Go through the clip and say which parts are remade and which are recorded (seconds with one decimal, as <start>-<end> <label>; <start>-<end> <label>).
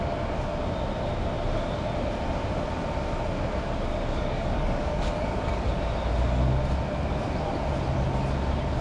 0.0-3.9 recorded; 3.9-5.7 remade; 5.7-8.8 recorded